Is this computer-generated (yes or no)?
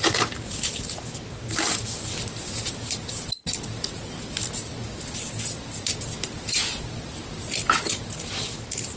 no